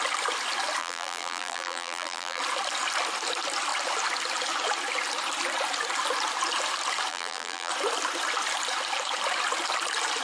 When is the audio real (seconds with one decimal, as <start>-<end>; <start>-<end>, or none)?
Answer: 0.0-0.8; 2.4-7.1; 7.7-10.2

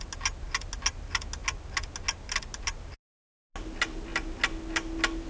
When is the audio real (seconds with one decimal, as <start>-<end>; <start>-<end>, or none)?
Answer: 0.0-5.3

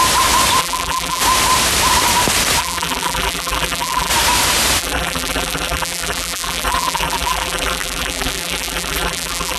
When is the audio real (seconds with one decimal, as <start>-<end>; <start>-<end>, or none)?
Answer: 0.0-0.6; 1.2-2.6; 4.1-4.8